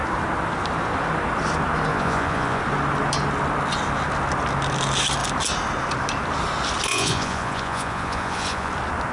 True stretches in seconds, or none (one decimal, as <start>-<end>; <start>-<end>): 0.0-1.9; 2.6-6.9; 8.7-9.1